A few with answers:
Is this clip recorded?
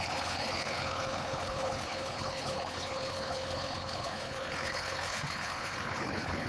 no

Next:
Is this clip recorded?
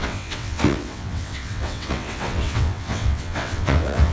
no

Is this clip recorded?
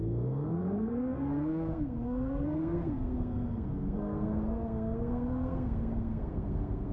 no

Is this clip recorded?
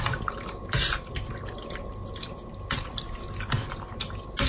yes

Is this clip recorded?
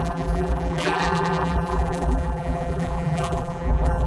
no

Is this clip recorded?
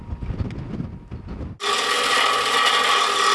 yes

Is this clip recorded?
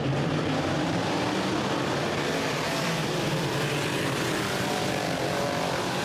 no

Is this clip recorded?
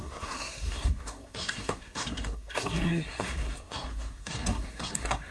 no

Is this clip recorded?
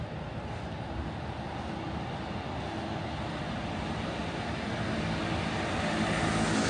yes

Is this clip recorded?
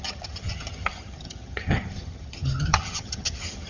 no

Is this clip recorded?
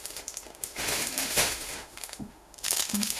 no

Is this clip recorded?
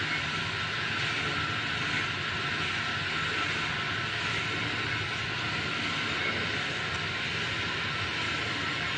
yes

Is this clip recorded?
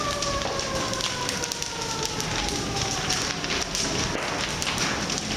yes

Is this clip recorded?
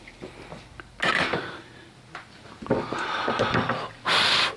yes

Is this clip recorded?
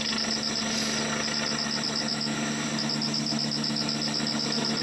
yes